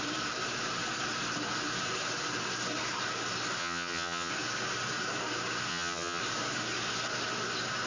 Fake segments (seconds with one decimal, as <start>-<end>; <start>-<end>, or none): 3.6-4.3; 5.7-6.2